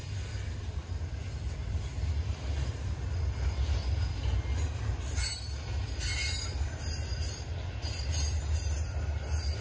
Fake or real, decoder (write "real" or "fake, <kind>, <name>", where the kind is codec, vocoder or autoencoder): real